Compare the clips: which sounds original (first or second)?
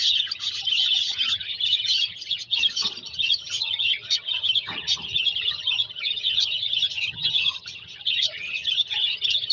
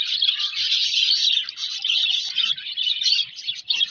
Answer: second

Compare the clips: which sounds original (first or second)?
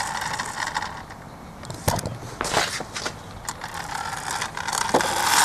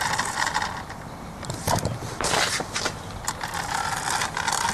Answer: first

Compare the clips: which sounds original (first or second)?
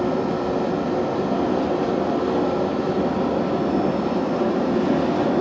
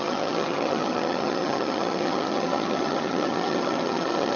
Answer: first